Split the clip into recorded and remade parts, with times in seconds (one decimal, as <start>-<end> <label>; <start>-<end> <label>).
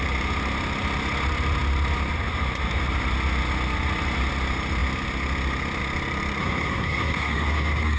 0.0-6.4 recorded; 6.4-8.0 remade